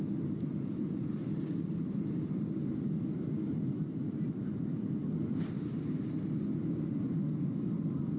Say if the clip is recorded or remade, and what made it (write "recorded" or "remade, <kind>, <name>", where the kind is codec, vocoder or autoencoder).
recorded